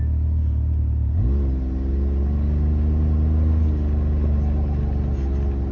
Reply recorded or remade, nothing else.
recorded